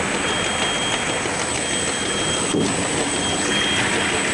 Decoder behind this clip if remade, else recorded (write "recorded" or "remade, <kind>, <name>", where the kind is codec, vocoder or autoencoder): recorded